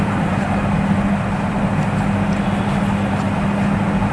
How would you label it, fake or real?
real